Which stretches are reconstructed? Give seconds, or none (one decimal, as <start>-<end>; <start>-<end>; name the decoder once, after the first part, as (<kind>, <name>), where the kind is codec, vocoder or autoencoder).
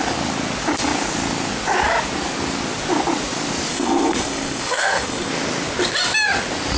3.7-5.3 (codec, SNAC)